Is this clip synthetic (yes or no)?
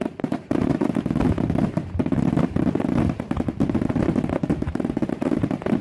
yes